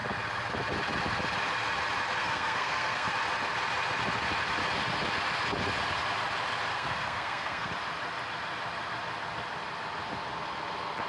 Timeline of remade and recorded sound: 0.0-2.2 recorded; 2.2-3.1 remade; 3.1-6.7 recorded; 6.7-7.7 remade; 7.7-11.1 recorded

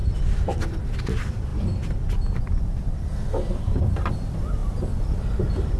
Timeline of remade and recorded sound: 0.0-5.8 recorded

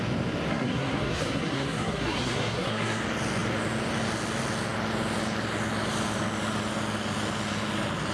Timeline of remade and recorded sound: 0.0-0.5 recorded; 0.5-3.0 remade; 3.0-8.1 recorded

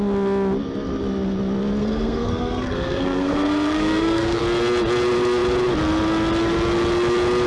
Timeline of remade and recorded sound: 0.0-1.8 recorded; 1.8-4.4 remade; 4.4-7.5 recorded